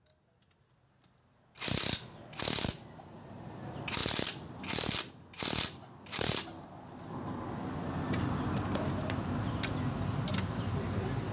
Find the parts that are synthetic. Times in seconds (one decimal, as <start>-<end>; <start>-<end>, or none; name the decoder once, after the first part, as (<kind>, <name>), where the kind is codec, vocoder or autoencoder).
none